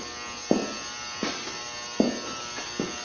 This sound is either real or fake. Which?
real